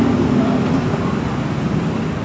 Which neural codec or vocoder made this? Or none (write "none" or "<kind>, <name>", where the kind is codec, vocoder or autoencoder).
none